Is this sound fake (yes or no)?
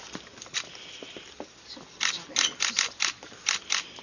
no